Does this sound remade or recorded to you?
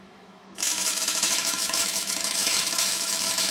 remade